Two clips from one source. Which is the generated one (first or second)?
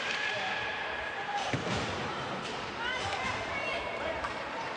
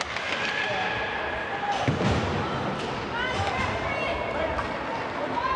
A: first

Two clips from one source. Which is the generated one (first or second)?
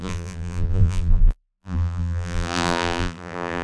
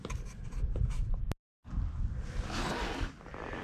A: first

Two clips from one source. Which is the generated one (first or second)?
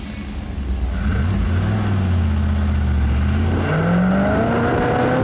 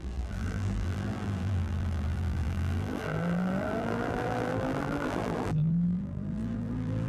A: second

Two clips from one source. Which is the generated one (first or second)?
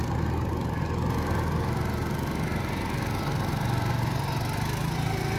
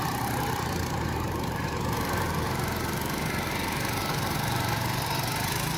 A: second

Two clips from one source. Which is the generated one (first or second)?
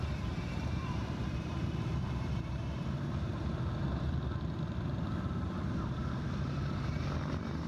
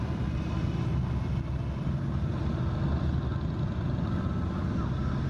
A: first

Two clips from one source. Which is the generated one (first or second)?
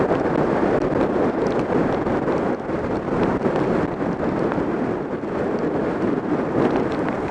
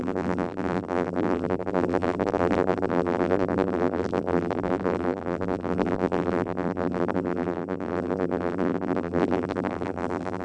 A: second